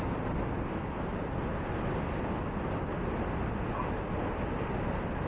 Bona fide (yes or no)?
yes